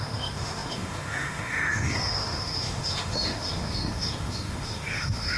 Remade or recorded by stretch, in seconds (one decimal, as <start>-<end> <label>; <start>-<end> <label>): 0.0-5.4 remade